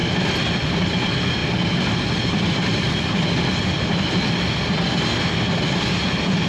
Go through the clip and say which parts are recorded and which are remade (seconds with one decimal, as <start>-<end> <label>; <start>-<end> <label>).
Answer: 0.0-6.5 recorded